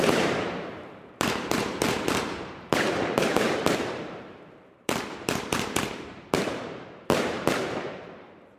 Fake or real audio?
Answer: fake